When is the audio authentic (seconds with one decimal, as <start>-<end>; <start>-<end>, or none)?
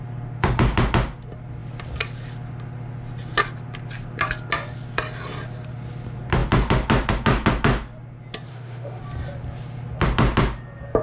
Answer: 0.0-8.5; 9.0-11.0